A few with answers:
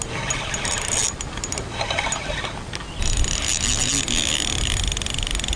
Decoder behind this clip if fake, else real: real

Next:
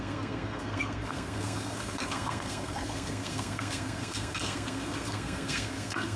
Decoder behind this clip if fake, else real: fake, codec, SNAC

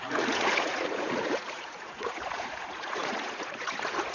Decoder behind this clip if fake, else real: fake, vocoder, Vocos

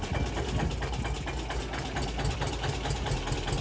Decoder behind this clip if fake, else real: real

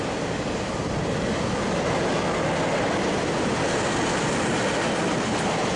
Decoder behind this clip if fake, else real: real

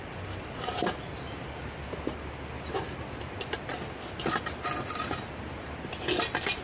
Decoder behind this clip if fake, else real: real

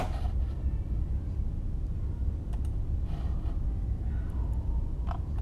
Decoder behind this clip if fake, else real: real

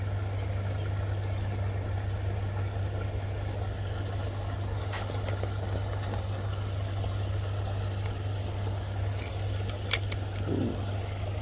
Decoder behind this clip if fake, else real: real